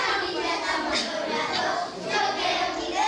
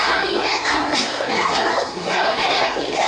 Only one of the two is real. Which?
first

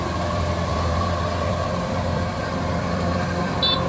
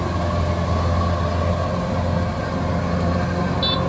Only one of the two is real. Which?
second